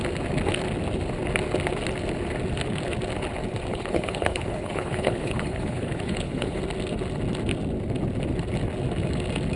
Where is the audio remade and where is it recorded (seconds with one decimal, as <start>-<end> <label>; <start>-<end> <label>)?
0.0-3.7 recorded; 3.7-6.6 remade; 6.6-9.6 recorded